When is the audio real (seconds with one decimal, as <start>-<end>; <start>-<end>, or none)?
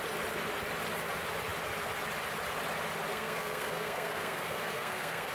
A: 0.0-3.1